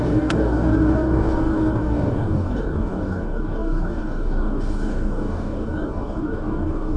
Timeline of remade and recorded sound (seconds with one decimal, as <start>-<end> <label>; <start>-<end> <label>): 0.0-7.0 remade